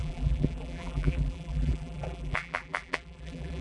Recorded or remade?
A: remade